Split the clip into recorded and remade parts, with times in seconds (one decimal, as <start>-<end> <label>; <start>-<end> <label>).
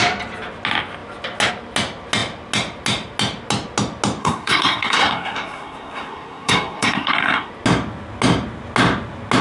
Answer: 0.0-4.2 recorded; 4.2-7.5 remade; 7.5-9.4 recorded